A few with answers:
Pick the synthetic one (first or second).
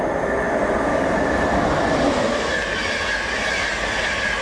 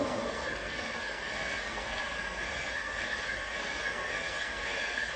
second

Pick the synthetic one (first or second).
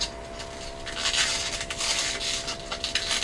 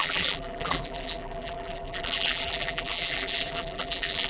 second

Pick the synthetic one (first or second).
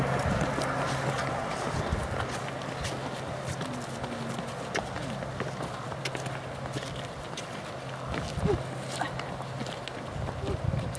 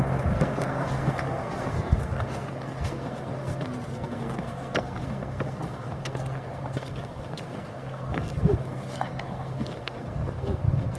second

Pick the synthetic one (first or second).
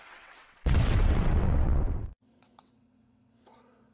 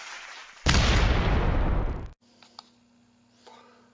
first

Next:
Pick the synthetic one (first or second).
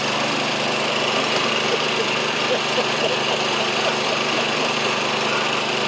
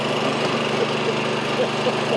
first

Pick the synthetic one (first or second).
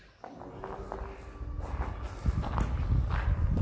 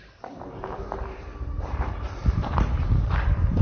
second